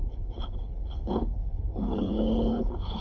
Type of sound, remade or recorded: remade